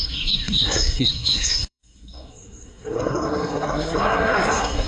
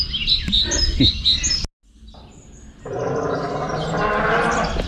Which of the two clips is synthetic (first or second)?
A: first